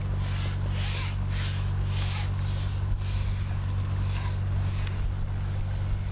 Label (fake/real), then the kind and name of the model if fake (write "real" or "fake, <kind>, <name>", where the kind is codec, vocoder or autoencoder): real